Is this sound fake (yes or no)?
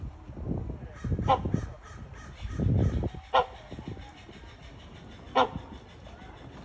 no